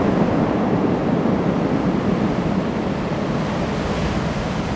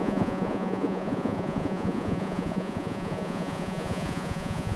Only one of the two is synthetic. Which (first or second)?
second